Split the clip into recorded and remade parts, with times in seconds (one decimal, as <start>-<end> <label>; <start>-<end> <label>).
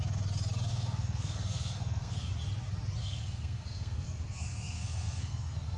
0.0-0.7 recorded; 0.7-2.3 remade; 2.3-3.0 recorded; 3.0-5.8 remade